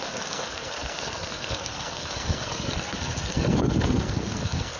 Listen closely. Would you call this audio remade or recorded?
remade